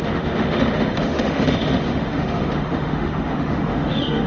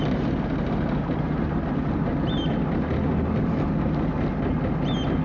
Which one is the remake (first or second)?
first